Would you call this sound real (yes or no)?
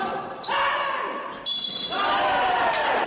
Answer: yes